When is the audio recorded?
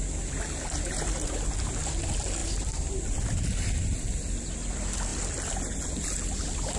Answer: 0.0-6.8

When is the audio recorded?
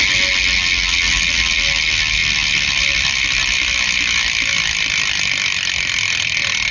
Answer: 0.0-2.2; 6.2-6.7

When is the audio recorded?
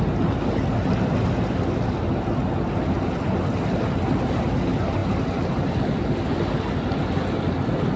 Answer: 0.0-8.0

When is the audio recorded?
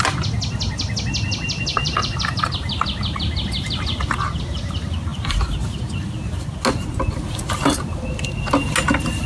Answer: 0.0-1.7; 2.4-9.3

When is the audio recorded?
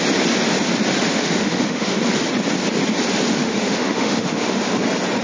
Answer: 0.0-1.1; 2.0-3.4; 4.7-5.2